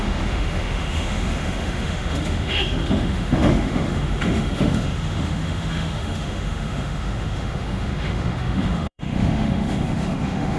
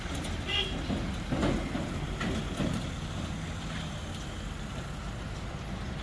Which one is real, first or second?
second